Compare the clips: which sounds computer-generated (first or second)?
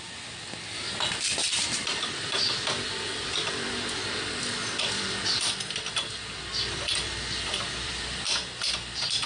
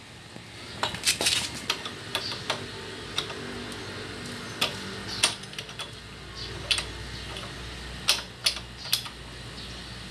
first